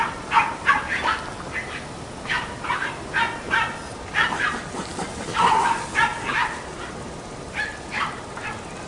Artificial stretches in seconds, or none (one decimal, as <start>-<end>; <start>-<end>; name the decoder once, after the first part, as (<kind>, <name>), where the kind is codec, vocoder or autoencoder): none